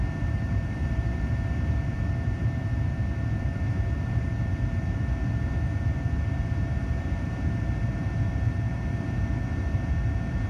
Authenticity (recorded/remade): remade